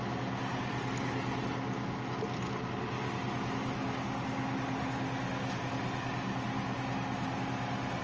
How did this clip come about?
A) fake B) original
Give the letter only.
B